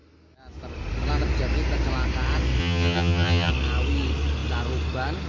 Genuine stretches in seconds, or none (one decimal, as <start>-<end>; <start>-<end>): 0.0-2.6; 3.5-5.3